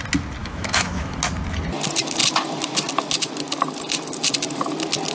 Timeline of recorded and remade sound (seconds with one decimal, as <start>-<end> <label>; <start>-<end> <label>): 0.0-0.4 recorded; 0.4-1.2 remade; 1.2-5.1 recorded